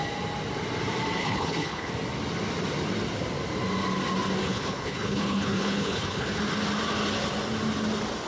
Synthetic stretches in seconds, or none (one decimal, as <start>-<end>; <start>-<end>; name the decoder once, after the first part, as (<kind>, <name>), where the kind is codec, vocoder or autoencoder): 1.2-1.9 (codec, HILCodec); 4.4-6.4